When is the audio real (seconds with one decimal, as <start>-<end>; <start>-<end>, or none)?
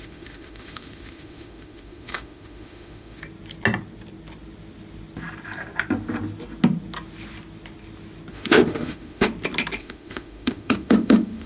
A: 3.2-8.3; 9.3-9.8